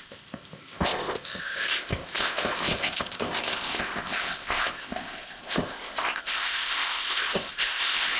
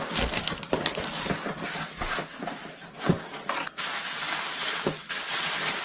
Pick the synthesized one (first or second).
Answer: first